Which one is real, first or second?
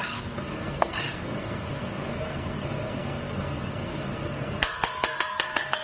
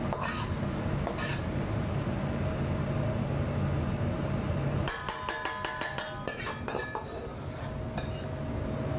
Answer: second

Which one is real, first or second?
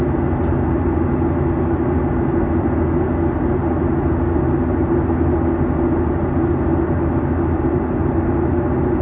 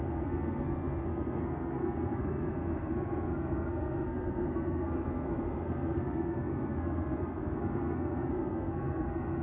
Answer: first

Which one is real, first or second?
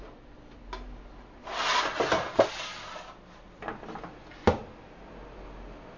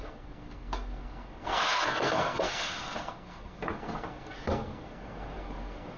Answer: first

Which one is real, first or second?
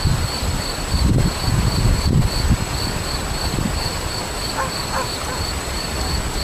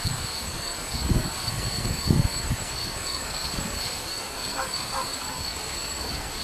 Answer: first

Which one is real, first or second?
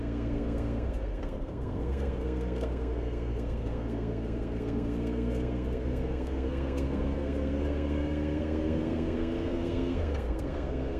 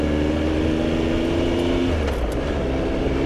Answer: second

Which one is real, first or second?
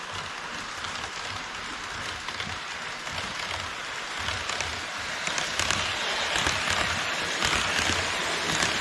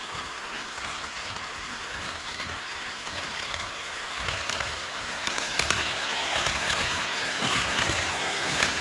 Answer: first